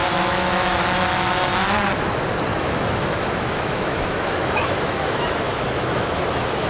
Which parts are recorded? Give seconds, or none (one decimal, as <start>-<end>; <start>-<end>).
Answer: 0.8-2.5